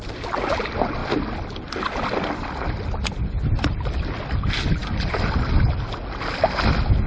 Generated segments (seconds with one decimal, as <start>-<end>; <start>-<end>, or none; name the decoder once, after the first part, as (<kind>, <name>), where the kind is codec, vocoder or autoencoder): none